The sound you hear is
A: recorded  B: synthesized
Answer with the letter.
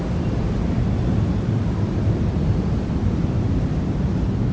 A